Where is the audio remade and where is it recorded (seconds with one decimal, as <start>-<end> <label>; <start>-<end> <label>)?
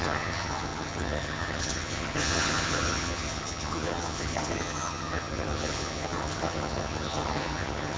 0.0-8.0 remade